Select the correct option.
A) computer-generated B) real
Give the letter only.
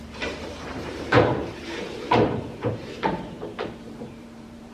A